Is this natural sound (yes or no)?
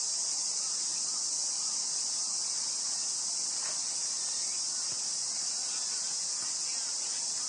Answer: yes